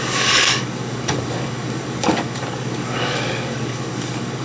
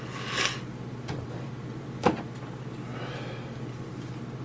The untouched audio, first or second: second